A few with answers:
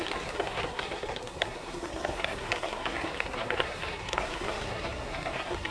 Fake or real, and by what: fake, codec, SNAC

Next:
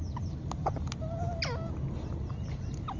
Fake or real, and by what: real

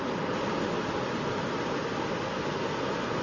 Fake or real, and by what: real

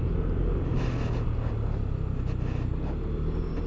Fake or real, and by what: real